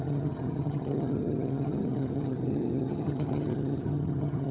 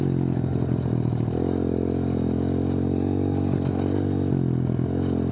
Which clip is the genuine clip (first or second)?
second